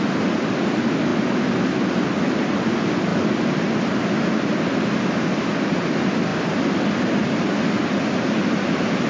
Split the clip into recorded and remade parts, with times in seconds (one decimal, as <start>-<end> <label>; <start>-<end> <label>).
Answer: 0.0-9.1 recorded